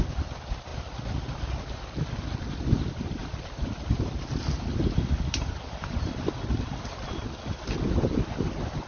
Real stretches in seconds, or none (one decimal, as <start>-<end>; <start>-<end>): 0.0-8.9